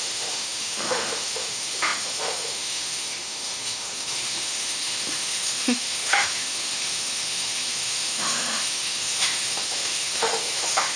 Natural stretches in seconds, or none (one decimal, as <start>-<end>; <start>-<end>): none